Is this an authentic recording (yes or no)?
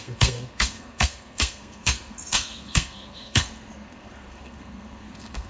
no